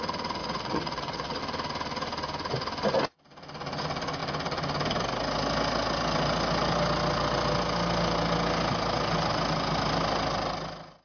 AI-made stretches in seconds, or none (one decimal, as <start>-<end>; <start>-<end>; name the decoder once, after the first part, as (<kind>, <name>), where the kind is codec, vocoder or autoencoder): 0.4-1.4 (vocoder, WaveNeXt)